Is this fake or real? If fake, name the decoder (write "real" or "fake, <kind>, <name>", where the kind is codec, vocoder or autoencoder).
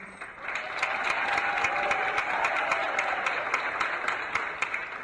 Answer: real